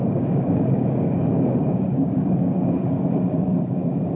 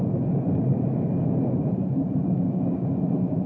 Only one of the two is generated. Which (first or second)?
first